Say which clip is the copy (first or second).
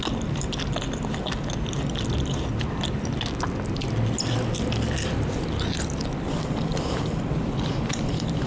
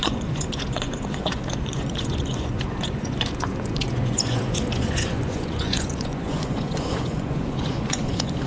second